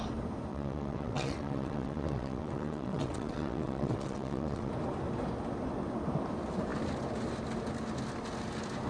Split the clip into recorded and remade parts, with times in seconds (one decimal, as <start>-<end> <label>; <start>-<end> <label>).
0.0-0.5 recorded; 0.5-4.7 remade; 4.7-8.9 recorded